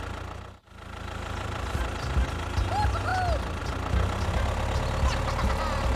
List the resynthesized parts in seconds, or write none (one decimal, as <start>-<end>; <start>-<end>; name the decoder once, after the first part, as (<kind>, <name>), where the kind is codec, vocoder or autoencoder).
none